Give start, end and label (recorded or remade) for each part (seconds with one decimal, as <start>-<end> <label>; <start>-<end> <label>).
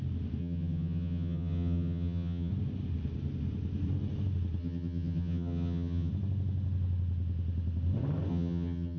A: 0.0-0.4 recorded; 0.4-2.5 remade; 2.5-4.6 recorded; 4.6-6.1 remade; 6.1-8.3 recorded; 8.3-9.0 remade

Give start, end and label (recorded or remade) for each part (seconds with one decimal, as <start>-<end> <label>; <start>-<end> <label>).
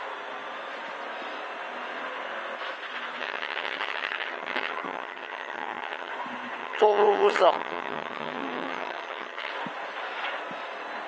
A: 0.0-3.2 recorded; 3.2-6.1 remade; 6.1-6.6 recorded; 6.6-9.5 remade; 9.5-11.1 recorded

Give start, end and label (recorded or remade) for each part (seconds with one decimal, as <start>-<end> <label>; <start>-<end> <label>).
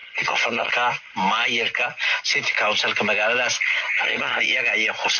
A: 0.0-0.7 remade; 0.7-3.7 recorded; 3.7-4.4 remade; 4.4-5.2 recorded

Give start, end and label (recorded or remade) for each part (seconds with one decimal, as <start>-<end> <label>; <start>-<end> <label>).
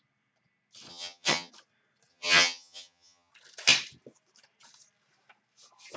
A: 0.0-0.9 recorded; 0.9-1.5 remade; 1.5-2.1 recorded; 2.1-3.3 remade; 3.3-6.0 recorded